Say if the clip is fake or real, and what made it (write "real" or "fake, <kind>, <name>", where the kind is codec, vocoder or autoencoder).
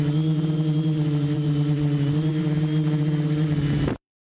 fake, vocoder, BigVGAN v2